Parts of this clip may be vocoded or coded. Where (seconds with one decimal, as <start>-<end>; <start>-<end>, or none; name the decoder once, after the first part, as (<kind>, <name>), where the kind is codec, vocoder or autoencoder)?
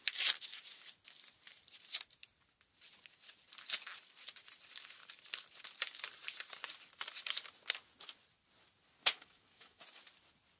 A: 9.0-9.8 (autoencoder, DAC-VAE)